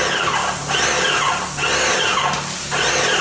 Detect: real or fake real